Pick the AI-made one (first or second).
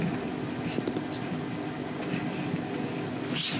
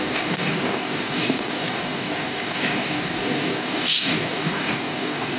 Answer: second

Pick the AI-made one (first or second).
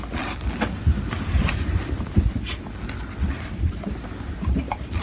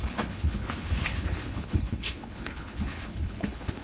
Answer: second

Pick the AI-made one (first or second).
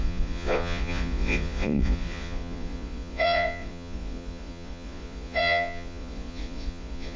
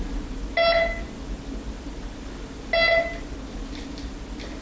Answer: first